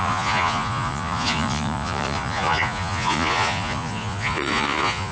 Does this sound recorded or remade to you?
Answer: remade